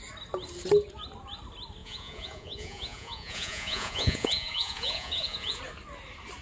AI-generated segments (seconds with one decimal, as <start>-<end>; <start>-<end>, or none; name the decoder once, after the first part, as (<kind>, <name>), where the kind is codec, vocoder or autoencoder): 1.8-5.6 (vocoder, Vocos)